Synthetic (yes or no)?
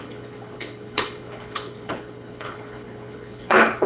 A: yes